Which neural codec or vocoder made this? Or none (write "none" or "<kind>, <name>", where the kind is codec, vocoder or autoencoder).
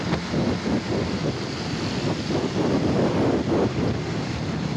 vocoder, BigVGAN v2